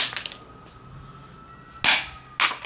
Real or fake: real